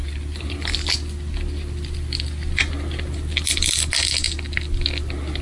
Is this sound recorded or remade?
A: recorded